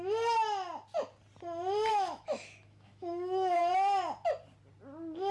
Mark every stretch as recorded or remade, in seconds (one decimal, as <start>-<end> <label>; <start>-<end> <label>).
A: 0.0-1.9 recorded; 1.9-3.6 remade; 3.6-5.3 recorded